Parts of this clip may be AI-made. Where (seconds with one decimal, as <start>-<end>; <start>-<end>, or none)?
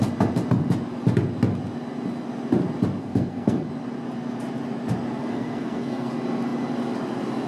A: 3.0-3.7; 5.2-6.1